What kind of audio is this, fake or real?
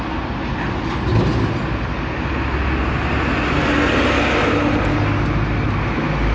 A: real